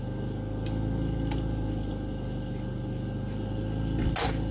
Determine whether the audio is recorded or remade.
recorded